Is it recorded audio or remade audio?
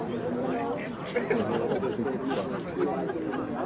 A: recorded